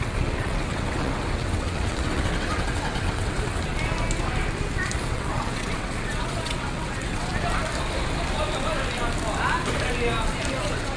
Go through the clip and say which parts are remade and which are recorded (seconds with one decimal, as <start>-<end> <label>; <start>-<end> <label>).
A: 0.0-3.6 remade; 3.6-5.1 recorded; 5.1-7.3 remade; 7.3-10.5 recorded; 10.5-11.0 remade